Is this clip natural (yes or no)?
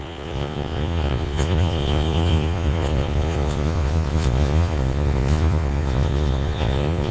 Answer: no